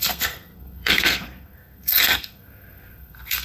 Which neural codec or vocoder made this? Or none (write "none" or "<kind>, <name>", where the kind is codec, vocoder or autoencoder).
codec, SNAC